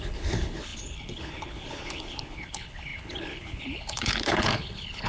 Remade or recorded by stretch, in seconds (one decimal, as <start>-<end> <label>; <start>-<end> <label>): 0.0-5.1 remade